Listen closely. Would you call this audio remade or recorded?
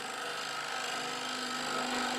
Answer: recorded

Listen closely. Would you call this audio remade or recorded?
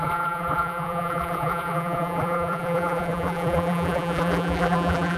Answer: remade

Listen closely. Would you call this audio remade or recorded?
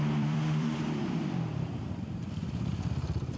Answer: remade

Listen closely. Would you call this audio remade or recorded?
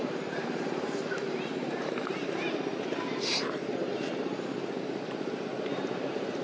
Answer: remade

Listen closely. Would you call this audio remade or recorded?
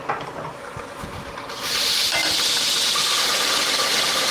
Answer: remade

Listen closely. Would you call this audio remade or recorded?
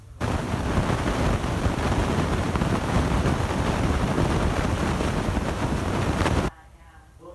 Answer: remade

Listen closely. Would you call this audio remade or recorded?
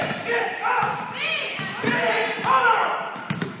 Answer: remade